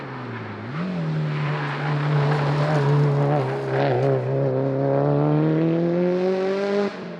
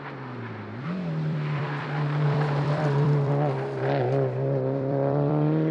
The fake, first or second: second